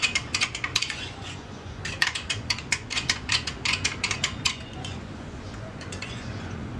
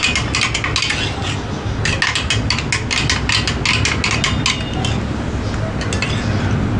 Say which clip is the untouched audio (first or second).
second